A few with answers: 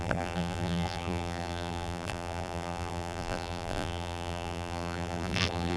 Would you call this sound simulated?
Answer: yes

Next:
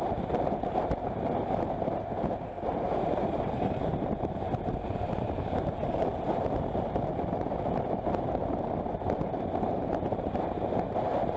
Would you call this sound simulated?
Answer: yes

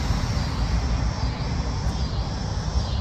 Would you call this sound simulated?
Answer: yes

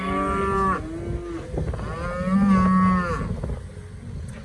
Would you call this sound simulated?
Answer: no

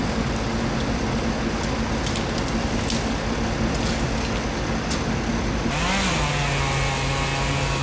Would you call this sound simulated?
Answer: no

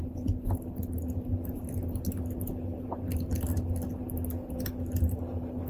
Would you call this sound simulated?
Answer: no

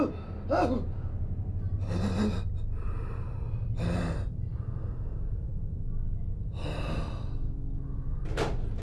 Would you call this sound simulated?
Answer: no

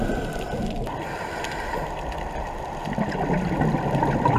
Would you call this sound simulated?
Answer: no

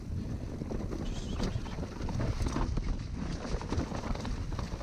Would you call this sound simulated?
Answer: no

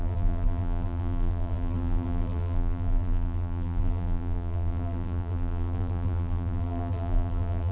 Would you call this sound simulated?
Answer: yes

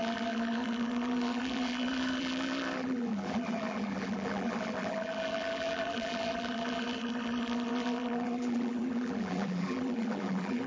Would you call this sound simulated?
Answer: yes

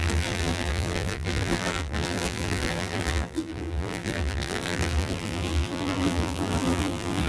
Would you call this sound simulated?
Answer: yes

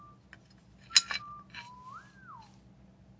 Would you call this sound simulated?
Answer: no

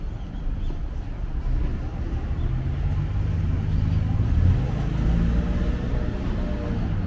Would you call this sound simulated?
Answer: no